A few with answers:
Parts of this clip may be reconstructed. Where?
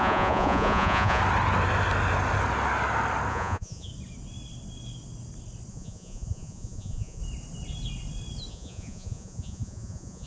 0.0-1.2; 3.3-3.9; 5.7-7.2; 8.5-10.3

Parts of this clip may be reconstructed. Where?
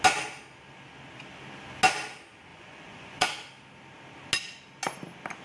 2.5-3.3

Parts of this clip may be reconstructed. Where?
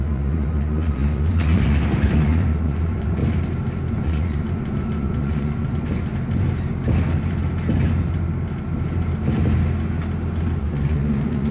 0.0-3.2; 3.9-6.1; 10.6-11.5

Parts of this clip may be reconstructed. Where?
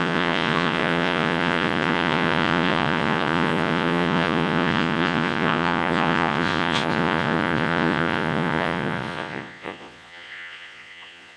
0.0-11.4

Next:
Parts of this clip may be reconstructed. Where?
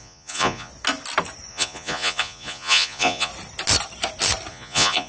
0.0-0.7; 1.5-3.3; 4.5-5.1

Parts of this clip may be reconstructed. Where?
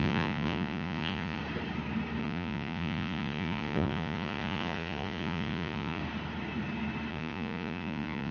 0.0-1.4; 2.2-6.0; 7.1-8.3